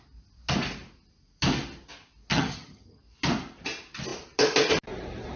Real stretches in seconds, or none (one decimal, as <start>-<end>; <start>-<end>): 0.0-2.3; 3.0-5.4